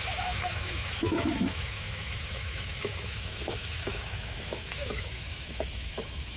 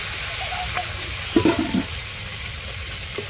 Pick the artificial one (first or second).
first